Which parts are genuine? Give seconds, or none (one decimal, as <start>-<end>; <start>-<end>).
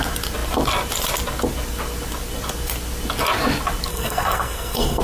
0.0-3.9